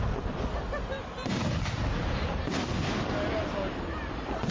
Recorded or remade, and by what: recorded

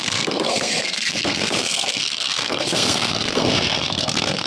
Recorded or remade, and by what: remade, codec, SNAC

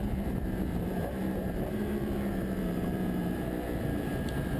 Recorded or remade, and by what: remade, vocoder, BigVGAN v2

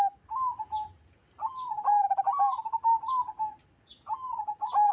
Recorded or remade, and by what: recorded